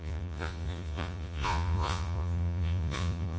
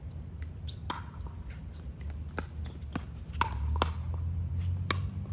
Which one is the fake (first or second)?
first